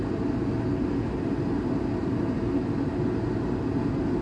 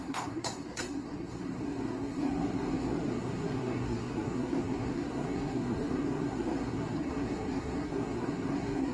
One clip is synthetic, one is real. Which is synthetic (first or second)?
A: second